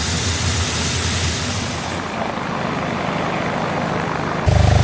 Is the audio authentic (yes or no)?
yes